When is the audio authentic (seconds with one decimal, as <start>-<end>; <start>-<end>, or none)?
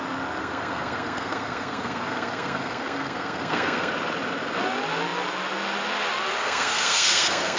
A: 0.0-0.4; 3.9-6.4